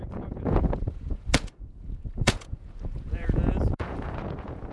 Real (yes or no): no